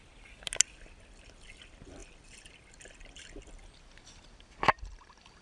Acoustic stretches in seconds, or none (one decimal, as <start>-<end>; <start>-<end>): 0.0-5.4

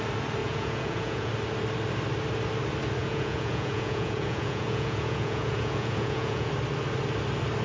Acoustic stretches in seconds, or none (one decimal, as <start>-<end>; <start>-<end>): 0.0-0.4; 1.3-3.0; 6.5-7.6